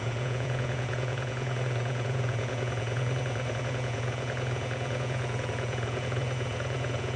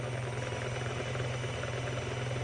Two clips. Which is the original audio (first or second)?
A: second